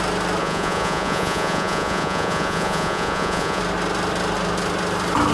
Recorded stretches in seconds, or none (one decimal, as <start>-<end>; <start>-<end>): 0.0-0.4; 3.6-5.3